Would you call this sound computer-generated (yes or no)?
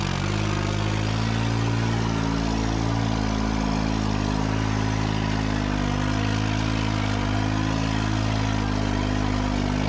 no